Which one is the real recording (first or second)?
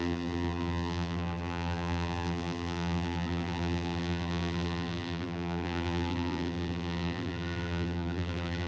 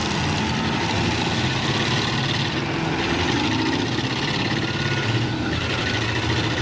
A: second